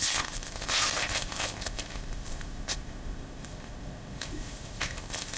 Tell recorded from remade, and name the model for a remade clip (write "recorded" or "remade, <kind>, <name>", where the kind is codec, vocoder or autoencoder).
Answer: remade, codec, ZipCodec